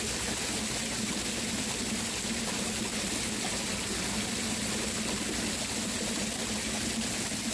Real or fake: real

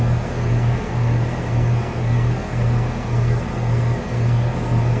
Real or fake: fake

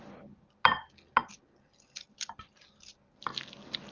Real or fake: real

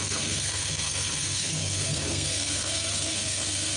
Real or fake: fake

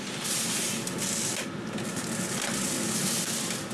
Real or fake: real